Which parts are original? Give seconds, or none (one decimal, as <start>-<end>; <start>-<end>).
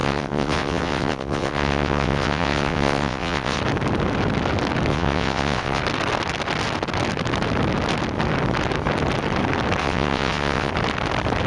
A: 3.6-4.9; 5.8-9.8; 10.7-11.5